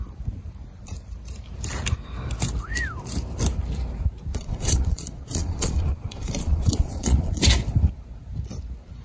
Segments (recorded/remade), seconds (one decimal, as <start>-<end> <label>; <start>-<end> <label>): 0.0-4.3 recorded; 4.3-7.4 remade; 7.4-9.0 recorded